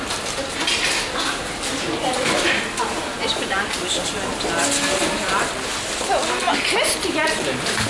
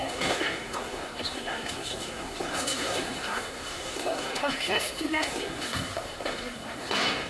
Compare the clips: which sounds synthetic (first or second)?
second